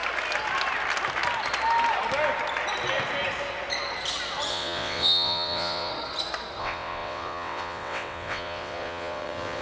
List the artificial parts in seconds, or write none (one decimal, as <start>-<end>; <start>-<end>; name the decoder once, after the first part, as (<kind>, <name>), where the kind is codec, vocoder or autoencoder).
4.5-5.9 (vocoder, WaveNeXt); 6.6-9.6